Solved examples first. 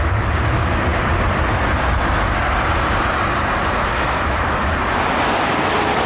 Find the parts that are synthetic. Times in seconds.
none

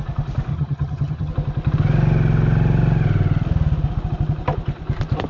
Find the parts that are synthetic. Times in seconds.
0.5-1.3